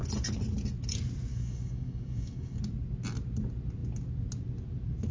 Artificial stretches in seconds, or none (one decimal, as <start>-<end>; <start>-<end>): 1.3-2.6